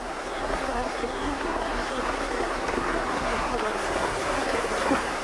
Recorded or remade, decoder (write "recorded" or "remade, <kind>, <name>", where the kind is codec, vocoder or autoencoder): remade, codec, SNAC